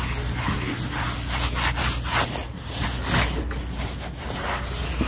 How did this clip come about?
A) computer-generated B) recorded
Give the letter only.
B